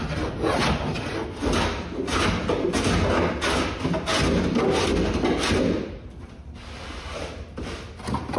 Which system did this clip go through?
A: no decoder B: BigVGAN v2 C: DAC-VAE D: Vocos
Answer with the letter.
A